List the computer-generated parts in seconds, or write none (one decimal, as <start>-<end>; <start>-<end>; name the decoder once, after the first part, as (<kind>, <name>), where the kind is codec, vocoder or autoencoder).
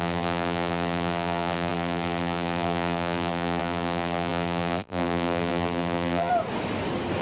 0.0-6.3 (vocoder, BigVGAN v2)